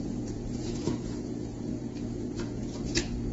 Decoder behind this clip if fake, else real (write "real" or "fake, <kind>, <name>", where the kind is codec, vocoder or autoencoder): fake, vocoder, Vocos